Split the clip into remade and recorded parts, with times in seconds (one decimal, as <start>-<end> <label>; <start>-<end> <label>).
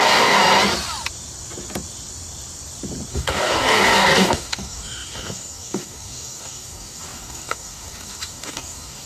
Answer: 0.0-0.4 remade; 0.4-3.1 recorded; 3.1-9.1 remade